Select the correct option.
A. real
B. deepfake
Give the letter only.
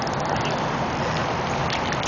A